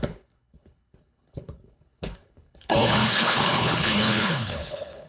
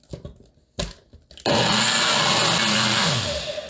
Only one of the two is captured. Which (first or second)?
second